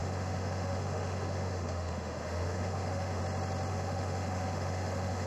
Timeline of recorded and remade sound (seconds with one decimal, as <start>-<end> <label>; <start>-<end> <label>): 0.0-3.2 remade; 3.2-3.7 recorded; 3.7-5.3 remade